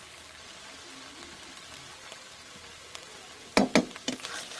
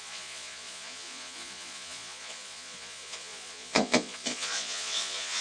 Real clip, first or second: first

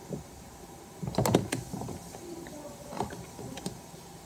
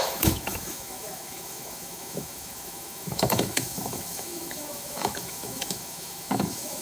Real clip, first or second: first